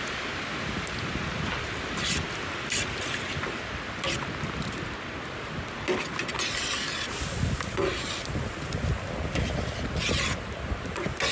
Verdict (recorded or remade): recorded